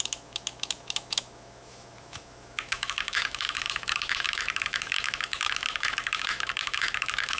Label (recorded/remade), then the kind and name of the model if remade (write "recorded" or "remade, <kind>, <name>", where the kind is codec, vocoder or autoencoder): remade, autoencoder, DAC-VAE